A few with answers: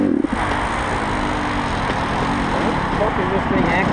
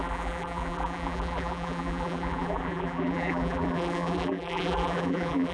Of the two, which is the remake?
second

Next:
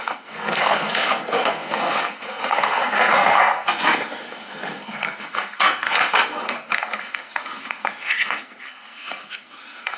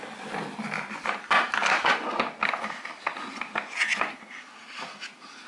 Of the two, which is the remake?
first